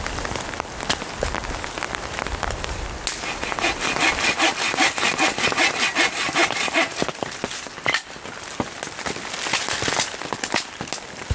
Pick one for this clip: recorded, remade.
recorded